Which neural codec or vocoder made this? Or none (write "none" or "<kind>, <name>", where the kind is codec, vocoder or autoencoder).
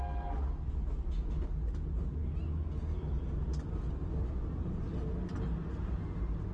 none